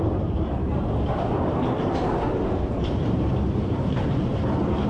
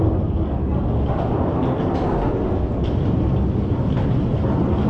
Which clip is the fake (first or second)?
first